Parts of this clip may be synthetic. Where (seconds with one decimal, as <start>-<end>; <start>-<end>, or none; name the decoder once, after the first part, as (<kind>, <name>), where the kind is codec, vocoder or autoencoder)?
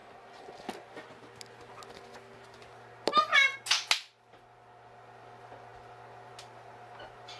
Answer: none